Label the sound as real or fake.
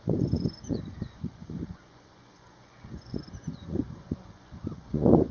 fake